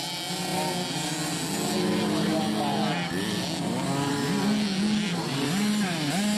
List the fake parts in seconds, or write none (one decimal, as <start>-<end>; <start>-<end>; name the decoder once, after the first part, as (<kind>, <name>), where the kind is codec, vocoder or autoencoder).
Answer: none